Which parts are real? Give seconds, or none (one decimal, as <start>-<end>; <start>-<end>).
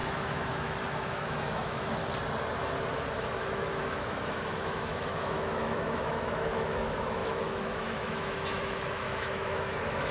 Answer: 2.0-3.4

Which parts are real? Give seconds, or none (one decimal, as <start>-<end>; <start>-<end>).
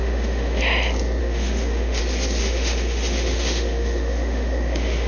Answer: 0.6-1.2; 2.0-2.4